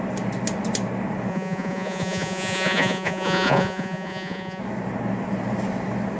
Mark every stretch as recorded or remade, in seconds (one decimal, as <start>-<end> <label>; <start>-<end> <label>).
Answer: 0.0-1.3 recorded; 1.3-4.6 remade; 4.6-6.2 recorded